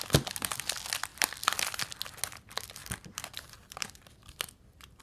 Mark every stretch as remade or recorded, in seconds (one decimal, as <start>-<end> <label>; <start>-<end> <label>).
0.0-1.1 recorded; 1.1-2.2 remade; 2.2-2.8 recorded; 2.8-5.0 remade